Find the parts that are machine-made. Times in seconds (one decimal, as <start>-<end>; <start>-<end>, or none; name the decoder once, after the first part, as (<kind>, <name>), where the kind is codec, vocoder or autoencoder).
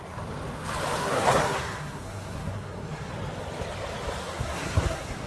1.0-3.1 (codec, SNAC); 4.2-5.3